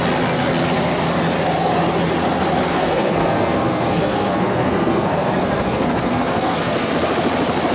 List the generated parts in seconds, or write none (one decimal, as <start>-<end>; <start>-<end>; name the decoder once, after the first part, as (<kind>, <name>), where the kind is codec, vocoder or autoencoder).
2.7-6.9 (codec, SNAC)